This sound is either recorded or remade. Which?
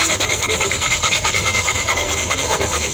remade